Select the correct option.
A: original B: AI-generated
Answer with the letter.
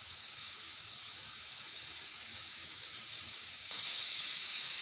B